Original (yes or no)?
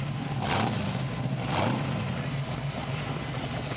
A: no